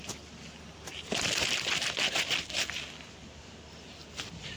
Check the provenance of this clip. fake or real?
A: real